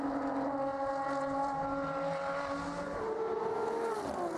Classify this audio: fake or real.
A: real